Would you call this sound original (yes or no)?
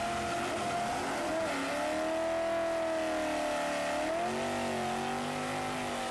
yes